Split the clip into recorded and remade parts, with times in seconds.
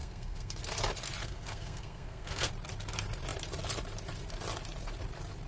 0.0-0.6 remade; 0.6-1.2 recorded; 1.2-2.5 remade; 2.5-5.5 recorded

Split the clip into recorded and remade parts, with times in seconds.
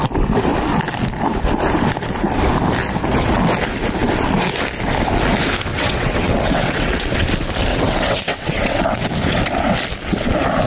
0.0-5.7 recorded; 5.7-7.1 remade; 7.1-7.7 recorded; 7.7-9.1 remade; 9.1-10.7 recorded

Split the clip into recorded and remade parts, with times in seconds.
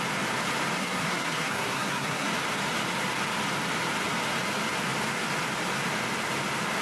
0.0-0.8 recorded; 0.8-2.3 remade; 2.3-6.8 recorded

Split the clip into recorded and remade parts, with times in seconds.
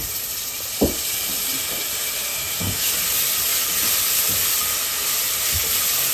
0.0-2.3 recorded; 2.3-2.9 remade; 2.9-6.1 recorded